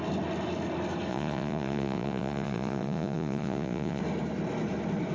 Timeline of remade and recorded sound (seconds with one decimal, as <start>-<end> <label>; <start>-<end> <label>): 0.0-1.1 recorded; 1.1-4.0 remade; 4.0-5.1 recorded